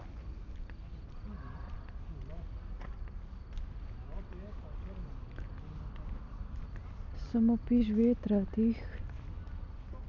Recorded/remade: recorded